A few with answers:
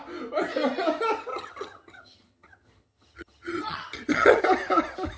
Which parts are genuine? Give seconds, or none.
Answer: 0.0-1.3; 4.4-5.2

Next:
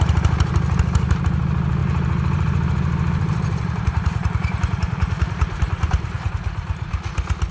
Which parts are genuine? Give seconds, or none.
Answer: 0.0-1.8; 6.3-7.5

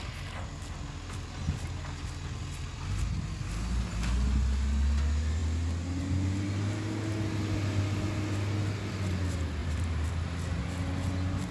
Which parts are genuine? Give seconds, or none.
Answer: 0.0-9.6; 10.1-11.5